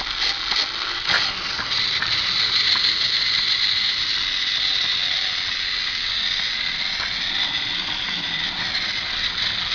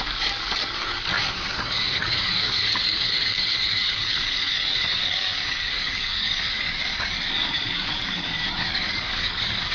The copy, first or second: second